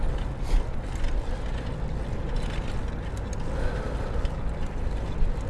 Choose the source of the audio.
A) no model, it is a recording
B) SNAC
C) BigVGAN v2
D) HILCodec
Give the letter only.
A